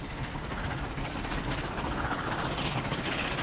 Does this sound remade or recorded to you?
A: recorded